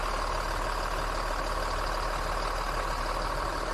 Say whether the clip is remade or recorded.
recorded